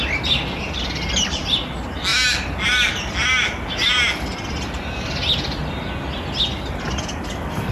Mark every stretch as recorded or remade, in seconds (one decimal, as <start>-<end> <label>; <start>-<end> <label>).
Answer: 0.0-7.7 recorded